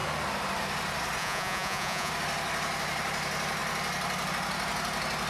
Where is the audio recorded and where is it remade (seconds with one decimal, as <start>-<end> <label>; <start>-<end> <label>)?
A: 0.0-1.2 recorded; 1.2-2.1 remade; 2.1-5.3 recorded